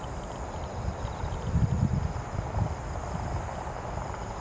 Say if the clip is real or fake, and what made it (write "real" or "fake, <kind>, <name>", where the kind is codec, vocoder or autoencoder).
real